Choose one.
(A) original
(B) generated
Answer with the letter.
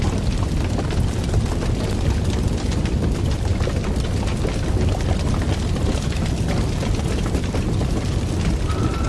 A